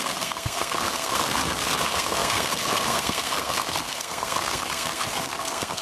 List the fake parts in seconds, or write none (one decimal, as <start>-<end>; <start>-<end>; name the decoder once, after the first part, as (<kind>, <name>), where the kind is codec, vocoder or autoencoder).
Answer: 0.0-5.8 (codec, SNAC)